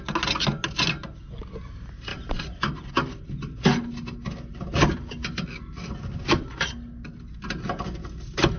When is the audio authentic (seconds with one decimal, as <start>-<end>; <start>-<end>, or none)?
0.0-2.1; 2.9-4.5; 5.7-8.6